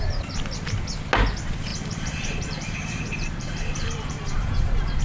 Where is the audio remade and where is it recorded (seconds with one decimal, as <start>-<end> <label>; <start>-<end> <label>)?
0.0-1.7 recorded; 1.7-5.0 remade